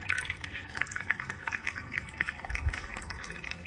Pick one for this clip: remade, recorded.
remade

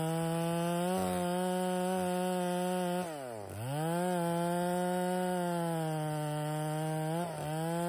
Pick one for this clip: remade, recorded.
recorded